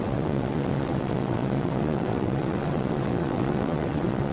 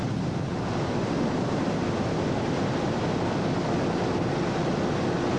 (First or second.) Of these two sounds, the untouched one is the second